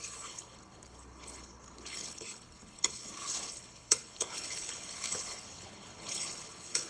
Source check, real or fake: fake